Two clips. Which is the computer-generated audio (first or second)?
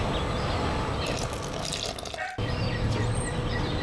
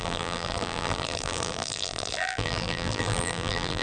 second